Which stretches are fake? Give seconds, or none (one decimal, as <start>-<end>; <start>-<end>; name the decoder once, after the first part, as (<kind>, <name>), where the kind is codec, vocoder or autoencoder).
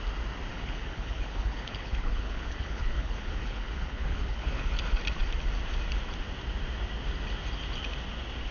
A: 0.5-4.7 (codec, HILCodec)